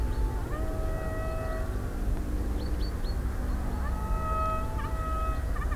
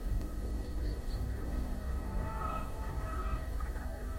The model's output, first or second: second